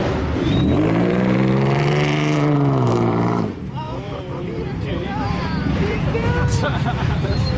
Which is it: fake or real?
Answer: fake